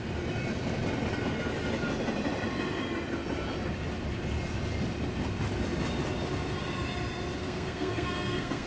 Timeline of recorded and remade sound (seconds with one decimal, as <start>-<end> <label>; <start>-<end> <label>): 0.0-7.4 recorded; 7.4-8.7 remade